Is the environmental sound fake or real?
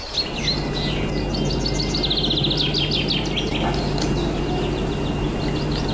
real